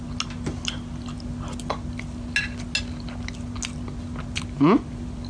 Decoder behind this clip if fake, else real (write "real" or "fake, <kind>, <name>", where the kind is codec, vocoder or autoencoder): real